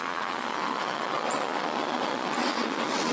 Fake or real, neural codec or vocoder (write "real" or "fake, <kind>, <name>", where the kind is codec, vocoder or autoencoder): fake, vocoder, Vocos